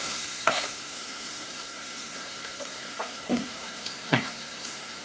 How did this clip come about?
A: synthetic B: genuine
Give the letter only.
A